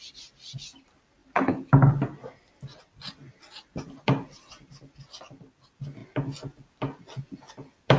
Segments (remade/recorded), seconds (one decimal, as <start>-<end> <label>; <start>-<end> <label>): 0.0-8.0 recorded